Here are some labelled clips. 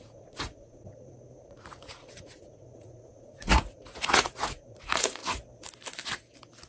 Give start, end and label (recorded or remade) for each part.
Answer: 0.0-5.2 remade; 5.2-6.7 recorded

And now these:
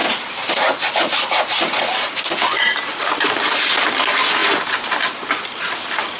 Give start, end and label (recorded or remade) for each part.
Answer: 0.0-6.2 recorded

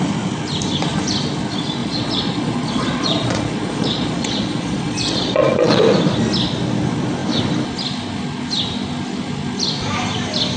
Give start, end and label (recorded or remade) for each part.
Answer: 0.0-1.8 recorded; 1.8-5.8 remade; 5.8-10.6 recorded

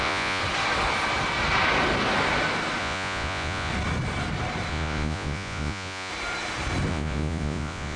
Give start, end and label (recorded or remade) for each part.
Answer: 0.0-0.4 remade; 0.4-2.8 recorded; 2.8-3.7 remade; 3.7-4.7 recorded; 4.7-6.1 remade; 6.1-6.9 recorded; 6.9-8.0 remade

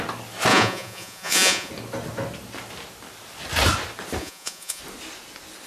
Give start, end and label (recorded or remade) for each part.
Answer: 0.0-0.5 recorded; 0.5-1.7 remade; 1.7-4.2 recorded; 4.2-4.8 remade; 4.8-5.7 recorded

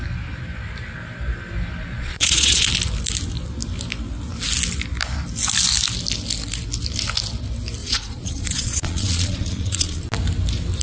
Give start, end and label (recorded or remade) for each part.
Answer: 0.0-1.9 recorded; 1.9-2.7 remade; 2.7-7.8 recorded; 7.8-10.0 remade; 10.0-10.8 recorded

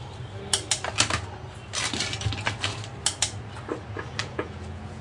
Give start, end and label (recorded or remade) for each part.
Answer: 0.0-4.2 recorded; 4.2-5.0 remade